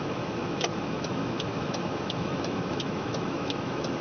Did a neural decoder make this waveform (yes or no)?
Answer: yes